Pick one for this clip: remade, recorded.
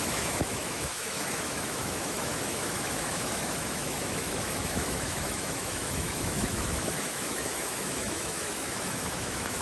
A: remade